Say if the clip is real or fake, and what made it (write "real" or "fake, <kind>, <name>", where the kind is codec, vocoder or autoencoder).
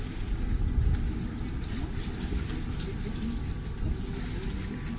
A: real